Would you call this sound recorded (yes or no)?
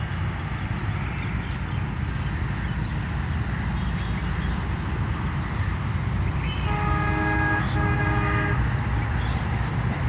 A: yes